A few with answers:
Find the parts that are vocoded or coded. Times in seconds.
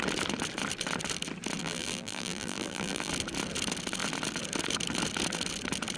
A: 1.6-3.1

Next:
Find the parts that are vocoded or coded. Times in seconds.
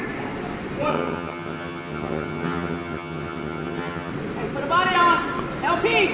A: 0.9-4.1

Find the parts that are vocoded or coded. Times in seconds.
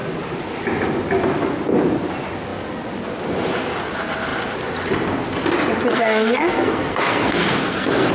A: 5.9-8.1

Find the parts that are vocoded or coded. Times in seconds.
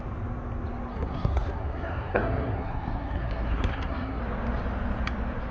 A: 0.9-4.2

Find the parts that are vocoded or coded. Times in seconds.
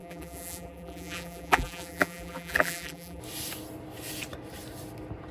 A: 0.0-3.2